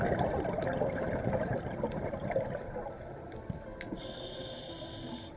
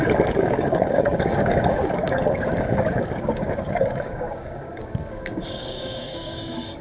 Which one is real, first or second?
first